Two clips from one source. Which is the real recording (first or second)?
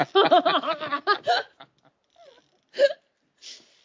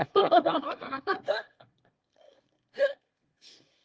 first